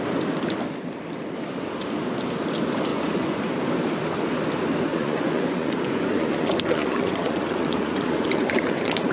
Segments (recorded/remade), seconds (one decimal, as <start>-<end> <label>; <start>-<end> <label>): 0.0-2.9 recorded; 2.9-3.4 remade; 3.4-4.9 recorded; 4.9-9.1 remade